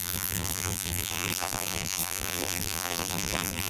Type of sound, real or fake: fake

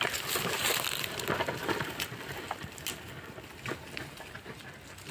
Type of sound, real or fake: real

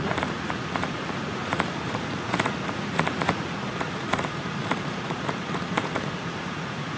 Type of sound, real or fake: fake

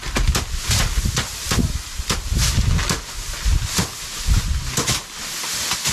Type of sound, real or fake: real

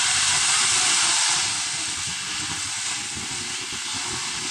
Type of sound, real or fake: real